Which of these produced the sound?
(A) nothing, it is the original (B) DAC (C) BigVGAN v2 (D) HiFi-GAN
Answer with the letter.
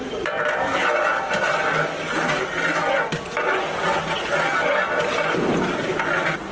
A